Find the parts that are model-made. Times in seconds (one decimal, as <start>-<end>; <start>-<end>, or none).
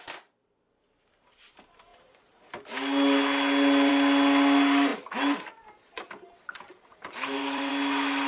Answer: 6.7-7.7